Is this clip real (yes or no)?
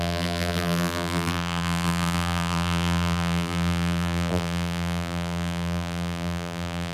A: no